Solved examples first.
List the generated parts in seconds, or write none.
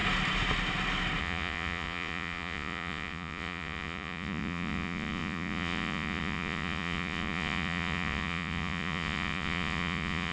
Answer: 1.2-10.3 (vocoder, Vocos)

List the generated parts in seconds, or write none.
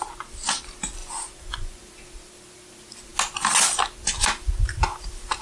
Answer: 1.0-1.8 (vocoder, Vocos)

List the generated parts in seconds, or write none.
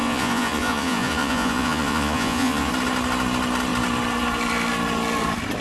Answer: 0.0-2.7 (vocoder, Vocos)